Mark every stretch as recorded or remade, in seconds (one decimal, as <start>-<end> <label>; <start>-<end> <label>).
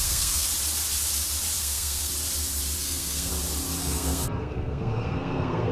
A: 0.0-0.5 remade; 0.5-1.6 recorded; 1.6-2.1 remade; 2.1-2.8 recorded; 2.8-3.3 remade; 3.3-3.8 recorded; 3.8-5.7 remade